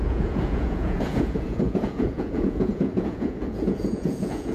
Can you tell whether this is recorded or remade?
remade